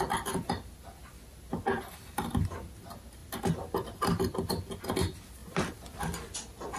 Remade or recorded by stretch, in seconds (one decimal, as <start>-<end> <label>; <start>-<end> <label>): 0.0-1.0 recorded; 1.0-2.6 remade; 2.6-3.2 recorded; 3.2-4.5 remade; 4.5-5.4 recorded; 5.4-6.0 remade; 6.0-6.8 recorded